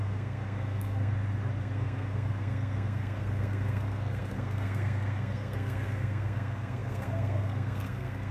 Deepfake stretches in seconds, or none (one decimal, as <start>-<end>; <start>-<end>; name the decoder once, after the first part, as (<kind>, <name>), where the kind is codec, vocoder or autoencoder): 0.0-1.1 (codec, SNAC); 1.6-8.3